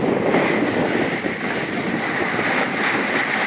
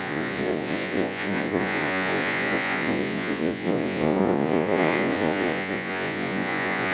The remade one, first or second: second